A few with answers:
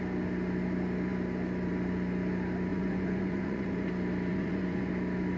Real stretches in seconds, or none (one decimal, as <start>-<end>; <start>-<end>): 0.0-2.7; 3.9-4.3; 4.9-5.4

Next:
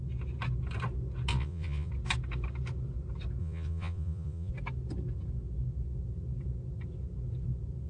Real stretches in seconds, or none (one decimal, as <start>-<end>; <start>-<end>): 0.0-1.3; 1.9-3.4; 4.5-7.9

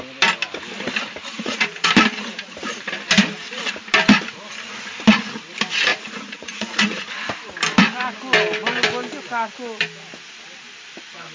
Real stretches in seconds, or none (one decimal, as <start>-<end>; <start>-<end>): 0.0-1.3; 1.9-5.9; 7.0-11.3